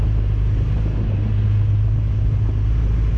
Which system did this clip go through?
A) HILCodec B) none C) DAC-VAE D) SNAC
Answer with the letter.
B